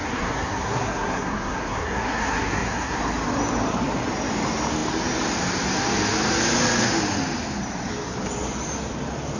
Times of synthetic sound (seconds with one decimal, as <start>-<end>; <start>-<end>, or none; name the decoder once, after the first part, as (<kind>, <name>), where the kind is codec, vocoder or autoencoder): 0.0-3.0 (codec, SNAC)